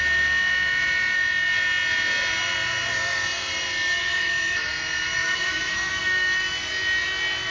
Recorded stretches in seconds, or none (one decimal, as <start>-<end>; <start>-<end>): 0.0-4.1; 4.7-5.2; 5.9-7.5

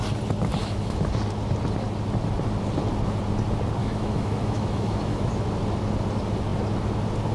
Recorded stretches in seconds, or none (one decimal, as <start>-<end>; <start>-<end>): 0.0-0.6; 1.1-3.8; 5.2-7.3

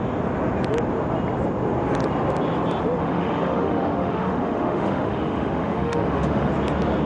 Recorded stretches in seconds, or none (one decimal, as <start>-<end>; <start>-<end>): 0.0-3.0; 6.5-7.1